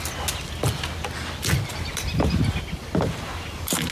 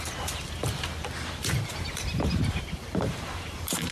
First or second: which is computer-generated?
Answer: second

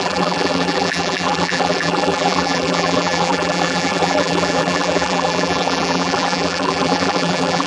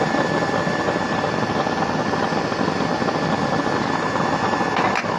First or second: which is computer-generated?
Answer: first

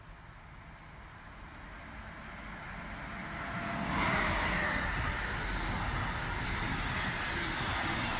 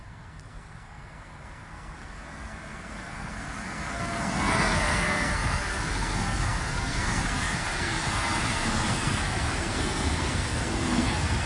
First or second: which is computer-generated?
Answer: second